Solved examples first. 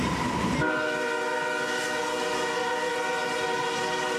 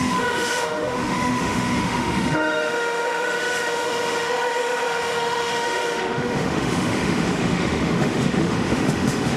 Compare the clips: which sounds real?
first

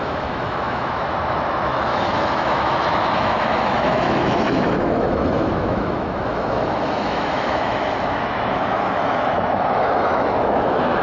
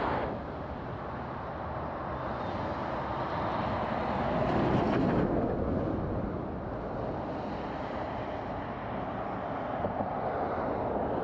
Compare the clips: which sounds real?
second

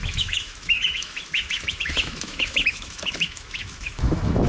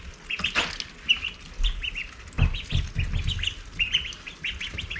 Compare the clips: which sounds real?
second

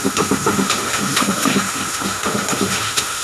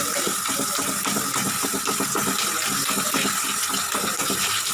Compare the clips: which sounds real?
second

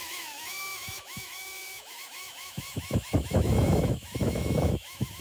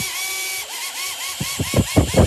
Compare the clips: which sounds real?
second